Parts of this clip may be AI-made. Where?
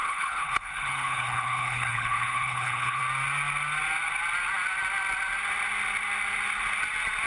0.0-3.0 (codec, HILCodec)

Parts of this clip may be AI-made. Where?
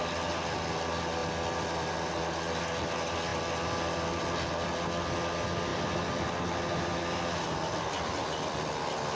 none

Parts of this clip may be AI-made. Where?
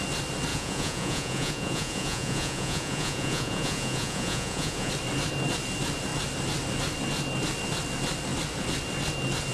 0.5-4.9 (vocoder, Vocos)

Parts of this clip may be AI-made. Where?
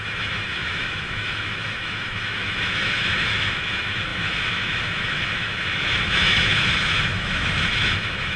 0.0-8.4 (autoencoder, DAC-VAE)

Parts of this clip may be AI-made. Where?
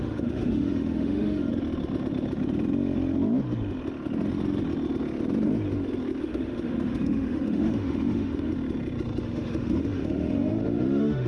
0.0-1.5 (autoencoder, DAC-VAE); 6.2-8.5; 9.2-11.3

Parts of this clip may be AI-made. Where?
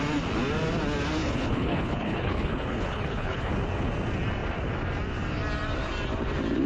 1.2-3.5 (codec, HILCodec)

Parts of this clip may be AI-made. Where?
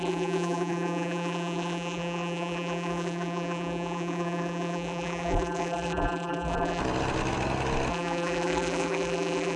0.0-6.8 (vocoder, BigVGAN v2); 7.9-9.6